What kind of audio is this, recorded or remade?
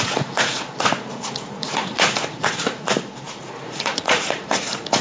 remade